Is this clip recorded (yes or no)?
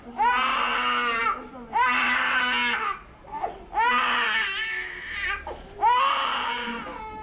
yes